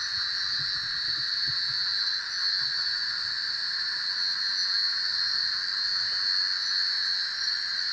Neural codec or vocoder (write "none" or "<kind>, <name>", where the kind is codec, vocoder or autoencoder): none